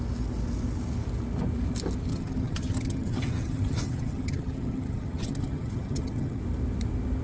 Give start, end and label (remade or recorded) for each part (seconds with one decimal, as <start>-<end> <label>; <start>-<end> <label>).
0.0-2.1 recorded; 2.1-6.4 remade; 6.4-7.2 recorded